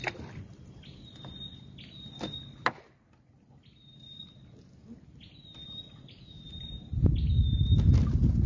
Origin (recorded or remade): recorded